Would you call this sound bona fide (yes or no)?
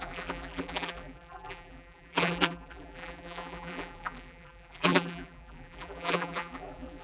no